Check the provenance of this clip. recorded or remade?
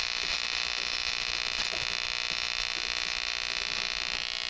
recorded